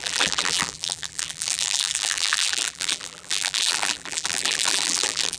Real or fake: fake